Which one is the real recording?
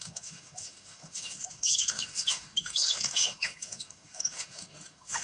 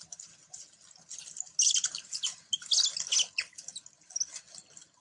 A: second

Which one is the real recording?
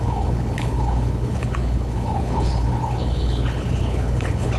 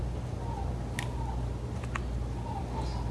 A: second